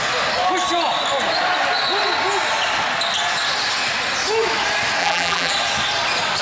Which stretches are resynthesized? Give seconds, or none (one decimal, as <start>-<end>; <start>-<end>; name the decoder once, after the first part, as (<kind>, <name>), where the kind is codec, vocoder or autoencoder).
5.0-5.5 (vocoder, BigVGAN v2)